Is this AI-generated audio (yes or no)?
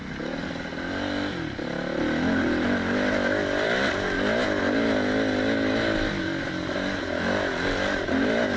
no